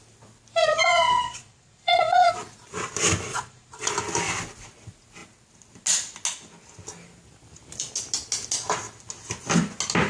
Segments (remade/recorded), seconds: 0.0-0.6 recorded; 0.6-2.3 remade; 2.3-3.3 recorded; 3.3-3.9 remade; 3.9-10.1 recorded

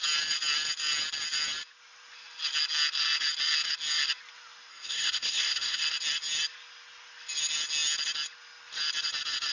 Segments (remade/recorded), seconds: 0.0-4.7 recorded; 4.7-5.8 remade; 5.8-9.5 recorded

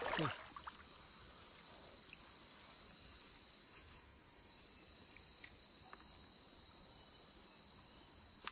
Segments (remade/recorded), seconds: 0.0-3.6 recorded; 3.6-4.6 remade; 4.6-8.5 recorded